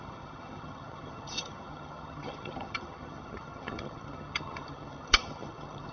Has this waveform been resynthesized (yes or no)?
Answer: yes